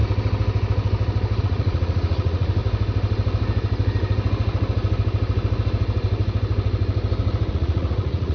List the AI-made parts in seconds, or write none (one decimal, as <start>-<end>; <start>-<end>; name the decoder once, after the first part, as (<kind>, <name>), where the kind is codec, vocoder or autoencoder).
1.4-2.6 (vocoder, Vocos); 7.5-8.3